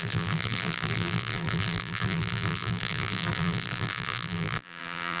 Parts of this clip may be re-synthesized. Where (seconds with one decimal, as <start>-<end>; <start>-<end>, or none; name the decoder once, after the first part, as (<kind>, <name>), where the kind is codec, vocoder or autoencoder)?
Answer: 0.0-5.2 (vocoder, BigVGAN v2)